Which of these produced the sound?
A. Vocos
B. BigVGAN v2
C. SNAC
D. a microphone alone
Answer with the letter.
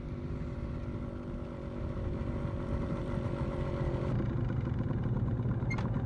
D